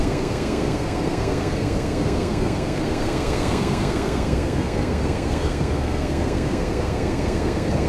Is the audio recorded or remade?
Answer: remade